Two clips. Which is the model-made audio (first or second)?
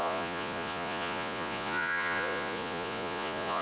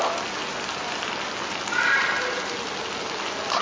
first